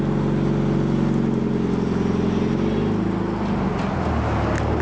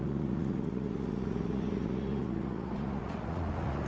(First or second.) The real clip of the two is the first